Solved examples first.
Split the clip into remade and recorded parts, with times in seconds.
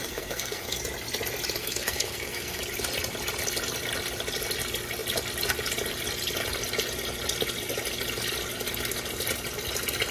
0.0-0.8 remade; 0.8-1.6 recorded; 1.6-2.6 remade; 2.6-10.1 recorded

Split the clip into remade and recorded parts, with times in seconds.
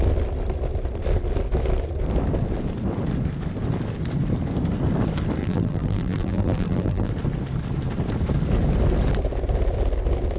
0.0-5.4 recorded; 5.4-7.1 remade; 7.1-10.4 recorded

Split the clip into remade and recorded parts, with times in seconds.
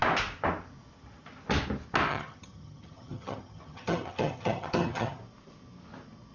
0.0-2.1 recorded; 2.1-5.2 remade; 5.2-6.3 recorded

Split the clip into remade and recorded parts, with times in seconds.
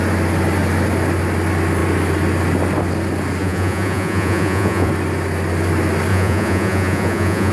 0.0-3.4 recorded; 3.4-4.9 remade; 4.9-6.1 recorded; 6.1-7.5 remade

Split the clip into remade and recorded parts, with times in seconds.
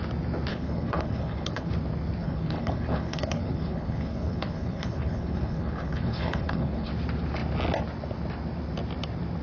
0.0-0.5 recorded; 0.5-1.7 remade; 1.7-2.2 recorded; 2.2-6.9 remade; 6.9-9.4 recorded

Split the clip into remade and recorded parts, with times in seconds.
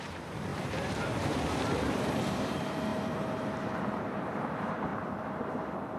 0.0-6.0 remade